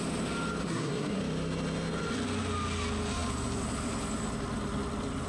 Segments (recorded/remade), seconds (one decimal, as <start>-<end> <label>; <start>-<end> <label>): 0.0-0.6 recorded; 0.6-1.2 remade; 1.2-5.3 recorded